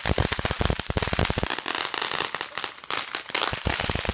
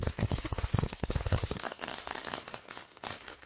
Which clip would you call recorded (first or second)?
first